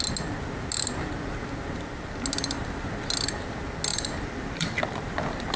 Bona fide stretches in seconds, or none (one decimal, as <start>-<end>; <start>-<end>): 0.0-3.9; 4.8-5.6